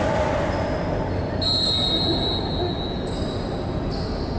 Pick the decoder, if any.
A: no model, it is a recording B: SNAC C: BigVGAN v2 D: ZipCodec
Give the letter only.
A